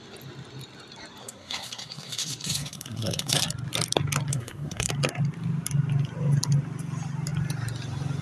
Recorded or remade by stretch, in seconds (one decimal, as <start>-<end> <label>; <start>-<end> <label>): 0.0-1.2 recorded; 1.2-3.4 remade; 3.4-4.3 recorded; 4.3-4.9 remade; 4.9-8.2 recorded